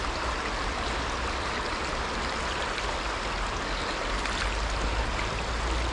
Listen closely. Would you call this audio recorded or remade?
recorded